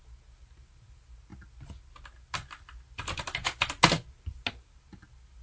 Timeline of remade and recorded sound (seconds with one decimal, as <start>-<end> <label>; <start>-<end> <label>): 0.0-5.4 recorded